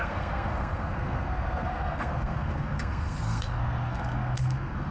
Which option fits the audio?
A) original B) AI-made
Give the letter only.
B